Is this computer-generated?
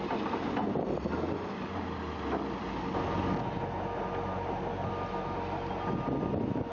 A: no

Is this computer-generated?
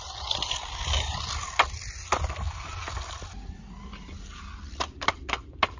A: no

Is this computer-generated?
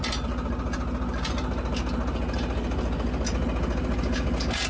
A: no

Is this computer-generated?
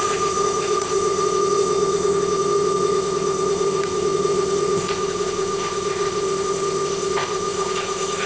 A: yes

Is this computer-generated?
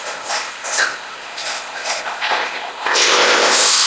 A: yes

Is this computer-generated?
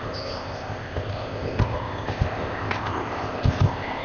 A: yes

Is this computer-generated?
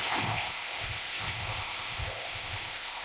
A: yes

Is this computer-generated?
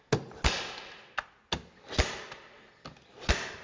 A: no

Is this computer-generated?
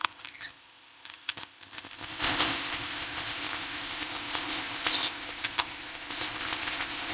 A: yes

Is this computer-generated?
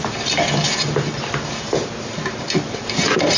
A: no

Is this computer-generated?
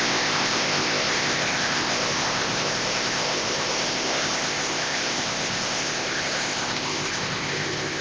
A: yes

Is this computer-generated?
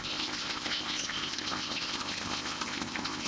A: yes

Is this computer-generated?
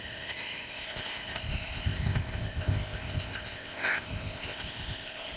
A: yes